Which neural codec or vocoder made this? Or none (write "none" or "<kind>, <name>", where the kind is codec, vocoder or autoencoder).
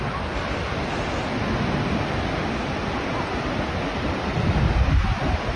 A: none